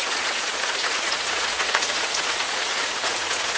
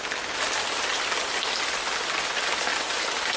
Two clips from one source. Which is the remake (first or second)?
first